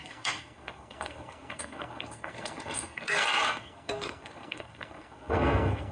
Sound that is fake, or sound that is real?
fake